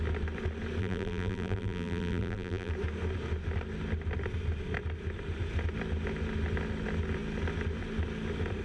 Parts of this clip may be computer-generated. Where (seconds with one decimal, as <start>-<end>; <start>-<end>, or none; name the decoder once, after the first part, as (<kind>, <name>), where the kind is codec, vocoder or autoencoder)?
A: 0.8-2.7 (vocoder, BigVGAN v2)